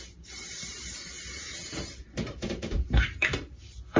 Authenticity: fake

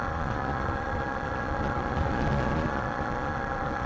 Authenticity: fake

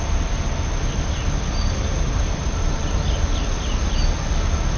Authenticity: real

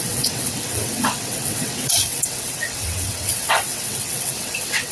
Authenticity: fake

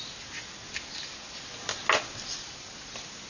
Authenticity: real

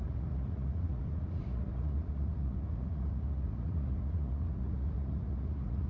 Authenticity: fake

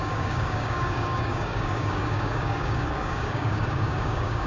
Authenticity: fake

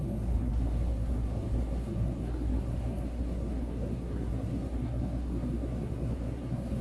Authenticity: fake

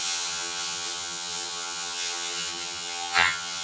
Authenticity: fake